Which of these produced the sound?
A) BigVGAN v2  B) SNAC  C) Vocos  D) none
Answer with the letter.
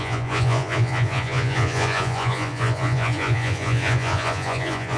C